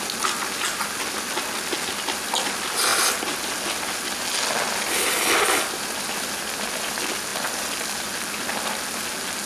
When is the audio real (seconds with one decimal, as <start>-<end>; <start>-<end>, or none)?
0.0-9.5